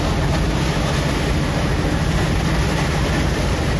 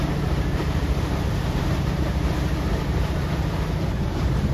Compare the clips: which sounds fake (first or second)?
second